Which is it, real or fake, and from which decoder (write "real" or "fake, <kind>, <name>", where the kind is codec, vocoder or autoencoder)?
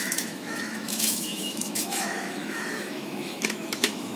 fake, autoencoder, DAC-VAE